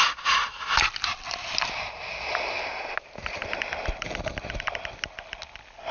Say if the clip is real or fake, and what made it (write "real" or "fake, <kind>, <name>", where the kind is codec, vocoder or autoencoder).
real